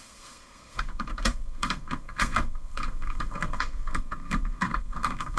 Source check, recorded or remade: remade